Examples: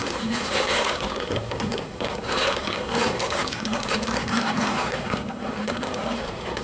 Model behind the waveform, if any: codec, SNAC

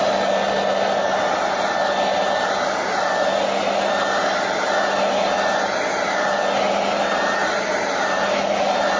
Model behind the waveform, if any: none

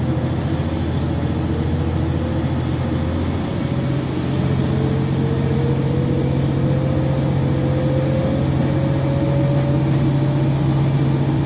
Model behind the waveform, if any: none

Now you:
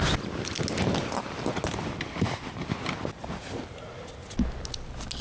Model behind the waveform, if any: none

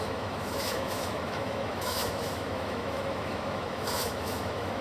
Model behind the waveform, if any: autoencoder, DAC-VAE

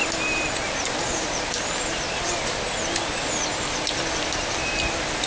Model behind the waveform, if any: none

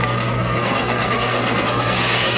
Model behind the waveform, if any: codec, SNAC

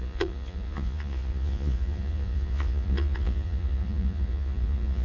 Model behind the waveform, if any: vocoder, Vocos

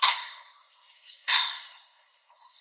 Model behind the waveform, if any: codec, SNAC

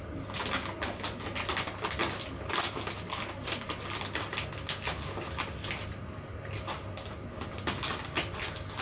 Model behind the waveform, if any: none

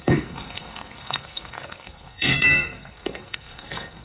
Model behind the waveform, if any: codec, SNAC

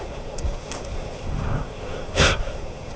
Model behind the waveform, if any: codec, SNAC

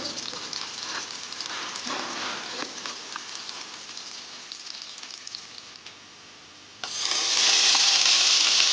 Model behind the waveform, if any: none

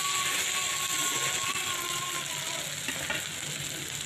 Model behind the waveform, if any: none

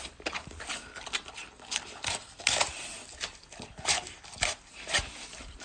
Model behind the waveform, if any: none